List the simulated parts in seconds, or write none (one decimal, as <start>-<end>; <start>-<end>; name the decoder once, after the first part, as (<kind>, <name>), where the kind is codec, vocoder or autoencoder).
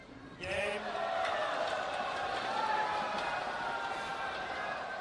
4.1-5.0 (vocoder, BigVGAN v2)